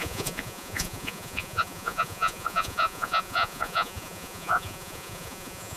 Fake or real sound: fake